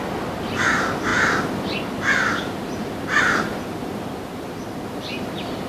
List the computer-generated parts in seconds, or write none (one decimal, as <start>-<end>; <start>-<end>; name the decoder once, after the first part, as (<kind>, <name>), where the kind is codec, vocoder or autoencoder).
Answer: none